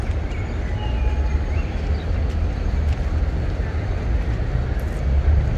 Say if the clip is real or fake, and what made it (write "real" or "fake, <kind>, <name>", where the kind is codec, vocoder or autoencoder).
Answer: real